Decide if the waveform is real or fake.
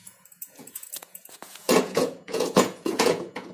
fake